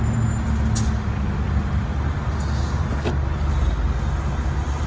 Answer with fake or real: real